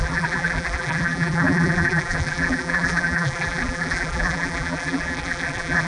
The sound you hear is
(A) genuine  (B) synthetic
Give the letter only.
B